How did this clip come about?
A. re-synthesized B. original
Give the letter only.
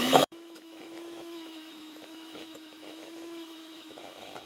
A